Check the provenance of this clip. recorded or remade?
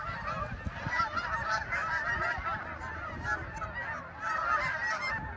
recorded